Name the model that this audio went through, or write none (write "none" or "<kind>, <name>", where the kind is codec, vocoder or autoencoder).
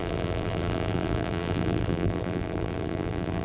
vocoder, BigVGAN v2